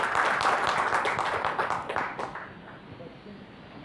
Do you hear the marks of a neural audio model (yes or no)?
no